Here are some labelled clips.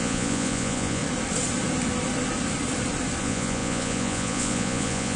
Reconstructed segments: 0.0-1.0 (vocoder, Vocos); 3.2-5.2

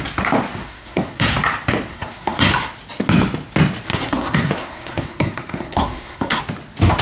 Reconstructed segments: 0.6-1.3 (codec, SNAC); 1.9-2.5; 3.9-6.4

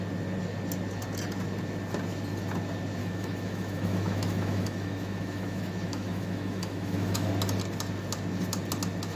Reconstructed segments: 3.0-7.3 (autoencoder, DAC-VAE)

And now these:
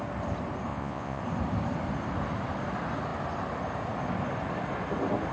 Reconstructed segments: 0.7-1.2 (vocoder, Vocos)

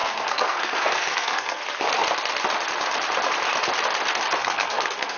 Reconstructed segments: 0.0-1.6 (codec, SNAC); 4.4-5.2

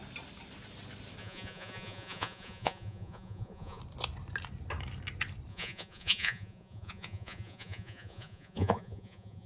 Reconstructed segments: 1.2-3.8 (vocoder, Vocos); 5.5-9.5

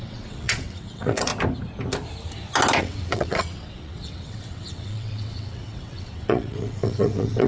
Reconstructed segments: 0.0-1.3 (vocoder, WaveNeXt); 2.8-7.5